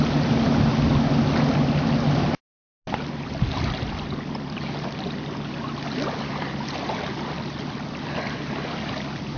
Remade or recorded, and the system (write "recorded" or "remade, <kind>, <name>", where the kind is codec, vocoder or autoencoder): recorded